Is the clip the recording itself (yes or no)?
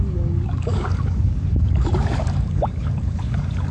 no